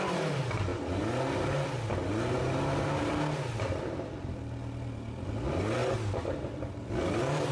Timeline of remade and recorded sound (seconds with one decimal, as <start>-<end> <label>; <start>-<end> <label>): 0.0-7.5 recorded